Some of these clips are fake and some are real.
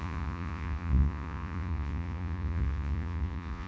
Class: fake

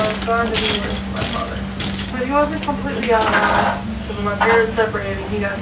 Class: real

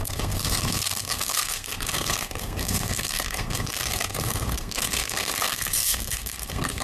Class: fake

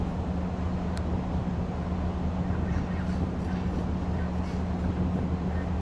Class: real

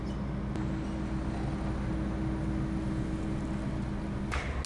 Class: real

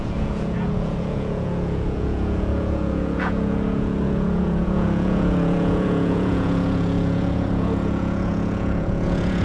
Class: fake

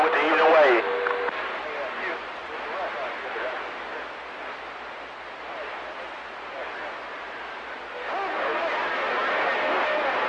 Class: real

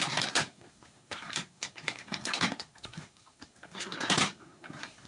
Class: fake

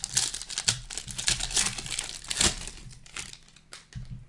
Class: real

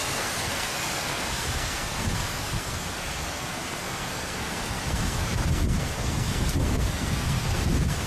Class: fake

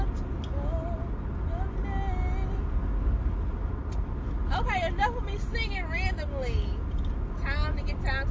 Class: real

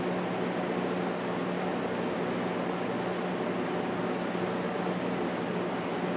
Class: real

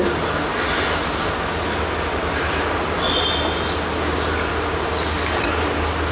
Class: real